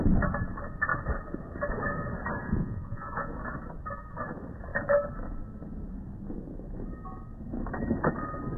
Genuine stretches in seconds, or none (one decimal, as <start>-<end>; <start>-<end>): 0.0-2.4; 3.3-8.6